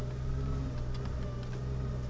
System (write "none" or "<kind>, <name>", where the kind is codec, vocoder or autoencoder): none